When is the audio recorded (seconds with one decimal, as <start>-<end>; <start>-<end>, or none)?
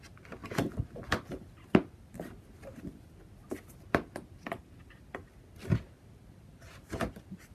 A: 0.0-7.5